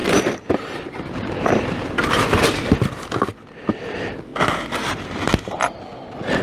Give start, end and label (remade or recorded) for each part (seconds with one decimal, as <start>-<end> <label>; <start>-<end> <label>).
0.0-2.5 remade; 2.5-6.4 recorded

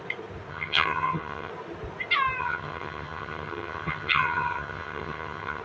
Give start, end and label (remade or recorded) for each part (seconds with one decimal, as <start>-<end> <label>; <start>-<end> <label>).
0.0-0.5 recorded; 0.5-1.5 remade; 1.5-2.4 recorded; 2.4-5.6 remade

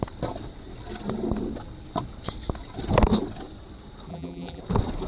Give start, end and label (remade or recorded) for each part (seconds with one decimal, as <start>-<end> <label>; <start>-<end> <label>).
0.0-4.1 recorded; 4.1-4.6 remade; 4.6-5.1 recorded

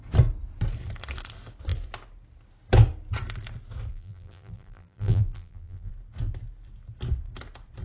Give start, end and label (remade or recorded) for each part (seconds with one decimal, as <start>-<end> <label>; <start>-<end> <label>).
0.0-3.9 recorded; 3.9-5.9 remade; 5.9-7.8 recorded

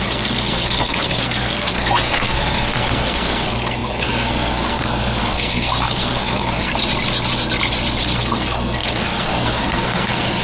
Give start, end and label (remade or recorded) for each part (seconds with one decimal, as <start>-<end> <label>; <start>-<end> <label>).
0.0-6.7 remade; 6.7-8.0 recorded; 8.0-10.4 remade